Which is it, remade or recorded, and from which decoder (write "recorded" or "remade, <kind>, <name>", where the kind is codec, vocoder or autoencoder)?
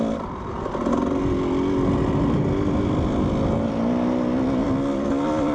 recorded